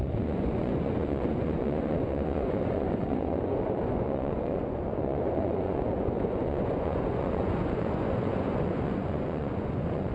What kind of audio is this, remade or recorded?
remade